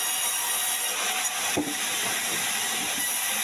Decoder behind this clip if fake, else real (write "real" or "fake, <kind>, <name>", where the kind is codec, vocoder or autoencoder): real